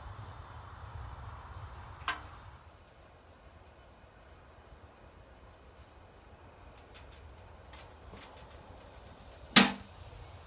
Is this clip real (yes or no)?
yes